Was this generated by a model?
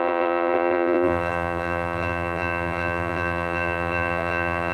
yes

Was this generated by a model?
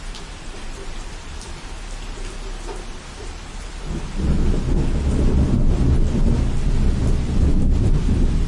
no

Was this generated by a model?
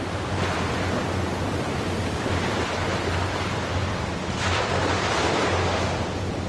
yes